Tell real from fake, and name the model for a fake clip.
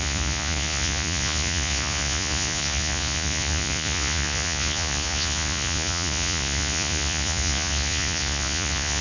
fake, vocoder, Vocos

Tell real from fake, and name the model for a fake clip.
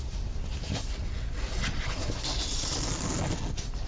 real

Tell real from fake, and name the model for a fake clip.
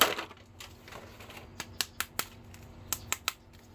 real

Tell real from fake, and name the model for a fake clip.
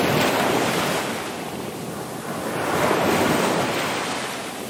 real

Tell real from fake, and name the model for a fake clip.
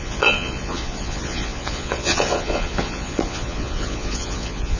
fake, vocoder, Vocos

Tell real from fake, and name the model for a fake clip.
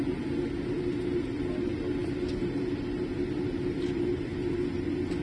real